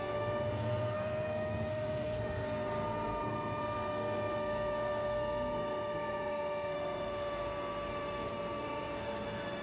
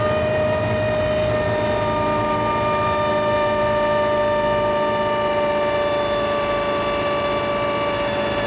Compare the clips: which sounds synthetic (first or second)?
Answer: first